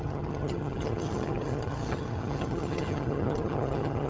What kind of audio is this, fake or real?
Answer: fake